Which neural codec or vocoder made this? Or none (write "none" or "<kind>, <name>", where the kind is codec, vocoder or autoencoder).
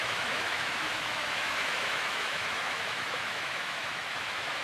autoencoder, DAC-VAE